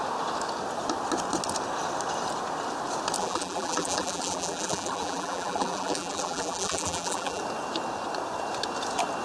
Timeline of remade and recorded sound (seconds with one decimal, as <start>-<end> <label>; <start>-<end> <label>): 0.0-3.2 recorded; 3.2-7.4 remade; 7.4-9.2 recorded